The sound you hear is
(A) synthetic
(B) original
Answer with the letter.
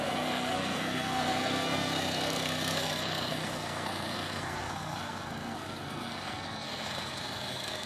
A